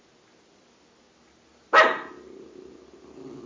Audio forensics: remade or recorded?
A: recorded